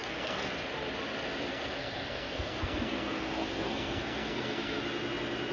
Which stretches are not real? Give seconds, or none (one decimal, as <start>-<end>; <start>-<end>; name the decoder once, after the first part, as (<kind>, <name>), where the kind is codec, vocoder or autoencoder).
0.0-0.5 (codec, SNAC); 1.5-4.8

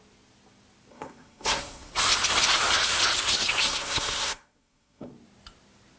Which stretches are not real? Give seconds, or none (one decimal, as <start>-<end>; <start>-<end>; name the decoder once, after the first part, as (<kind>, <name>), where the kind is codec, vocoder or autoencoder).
0.9-1.9 (codec, SNAC); 3.6-5.1

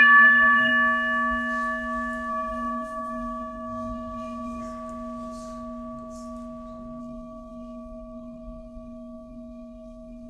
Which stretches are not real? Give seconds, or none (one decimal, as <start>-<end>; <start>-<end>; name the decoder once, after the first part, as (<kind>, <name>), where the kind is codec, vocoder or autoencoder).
0.0-0.7 (codec, SNAC); 2.3-4.6; 7.0-10.3

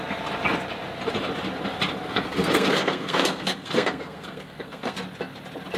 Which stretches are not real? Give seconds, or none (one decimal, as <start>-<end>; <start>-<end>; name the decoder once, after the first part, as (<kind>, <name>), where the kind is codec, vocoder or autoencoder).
2.1-4.9 (codec, SNAC)